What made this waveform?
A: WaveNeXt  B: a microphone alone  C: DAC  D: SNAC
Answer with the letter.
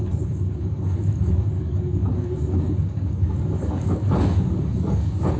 C